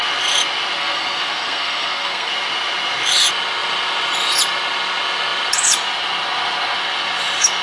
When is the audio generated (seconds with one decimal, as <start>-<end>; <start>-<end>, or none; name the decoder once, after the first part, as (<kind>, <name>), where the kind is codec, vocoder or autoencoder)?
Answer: 0.8-2.3 (codec, SNAC)